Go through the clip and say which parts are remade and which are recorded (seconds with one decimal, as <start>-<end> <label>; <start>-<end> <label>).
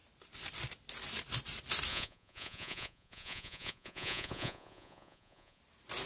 0.0-1.9 recorded; 1.9-5.6 remade; 5.6-6.1 recorded